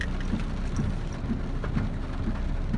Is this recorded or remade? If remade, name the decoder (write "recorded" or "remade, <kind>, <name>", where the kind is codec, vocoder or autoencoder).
recorded